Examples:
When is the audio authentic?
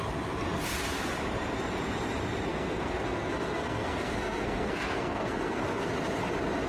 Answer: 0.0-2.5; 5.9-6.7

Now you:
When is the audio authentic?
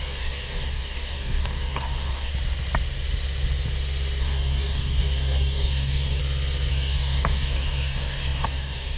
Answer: 2.3-4.2; 6.2-6.7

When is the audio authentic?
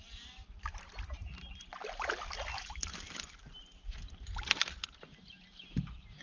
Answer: 0.0-6.2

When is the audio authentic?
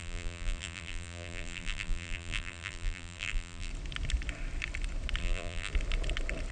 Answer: 3.7-5.2; 5.7-6.5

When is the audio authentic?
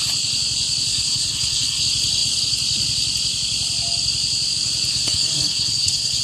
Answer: 0.0-0.9; 1.8-4.9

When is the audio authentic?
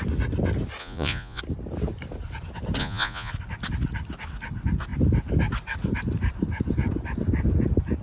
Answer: 0.0-0.8; 1.4-2.8; 3.3-8.0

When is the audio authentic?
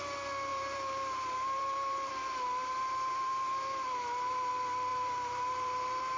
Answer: 0.0-0.5; 2.1-2.6; 4.5-4.9